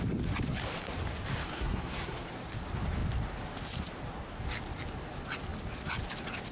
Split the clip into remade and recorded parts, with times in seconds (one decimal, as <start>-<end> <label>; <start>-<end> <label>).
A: 0.0-1.5 recorded; 1.5-2.3 remade; 2.3-6.5 recorded